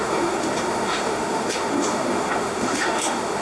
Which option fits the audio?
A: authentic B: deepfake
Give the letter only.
B